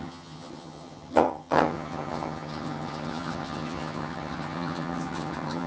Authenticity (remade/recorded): remade